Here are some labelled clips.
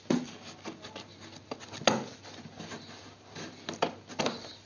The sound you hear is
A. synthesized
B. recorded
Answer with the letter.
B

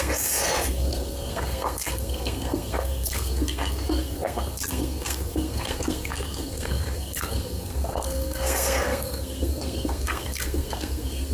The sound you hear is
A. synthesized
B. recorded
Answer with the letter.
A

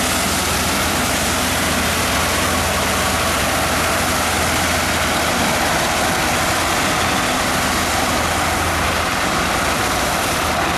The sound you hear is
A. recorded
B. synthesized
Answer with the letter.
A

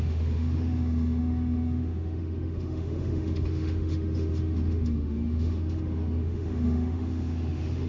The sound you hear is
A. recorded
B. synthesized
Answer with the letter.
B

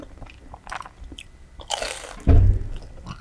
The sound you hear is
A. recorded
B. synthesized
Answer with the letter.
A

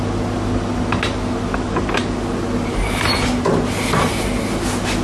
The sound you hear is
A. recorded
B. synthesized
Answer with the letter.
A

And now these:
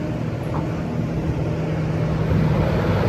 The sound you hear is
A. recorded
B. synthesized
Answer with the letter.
A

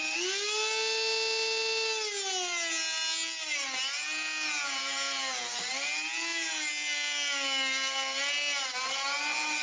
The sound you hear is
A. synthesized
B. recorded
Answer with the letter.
B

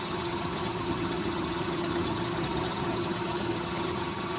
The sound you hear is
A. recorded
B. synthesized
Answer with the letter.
B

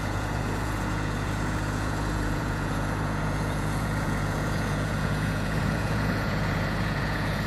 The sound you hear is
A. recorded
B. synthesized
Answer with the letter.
B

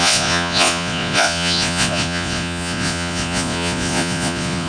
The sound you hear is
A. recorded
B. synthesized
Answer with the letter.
B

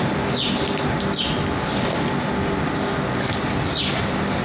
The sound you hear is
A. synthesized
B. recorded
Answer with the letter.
B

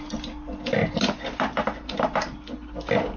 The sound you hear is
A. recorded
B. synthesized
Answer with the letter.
A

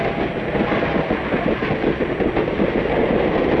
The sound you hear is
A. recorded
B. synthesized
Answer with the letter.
A